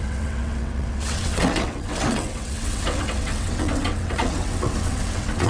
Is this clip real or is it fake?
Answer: fake